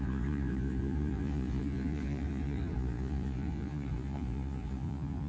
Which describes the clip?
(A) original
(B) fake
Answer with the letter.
B